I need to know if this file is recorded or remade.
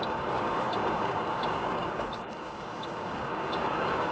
remade